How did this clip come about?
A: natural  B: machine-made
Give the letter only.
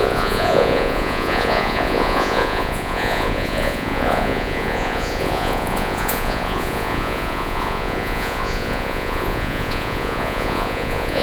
B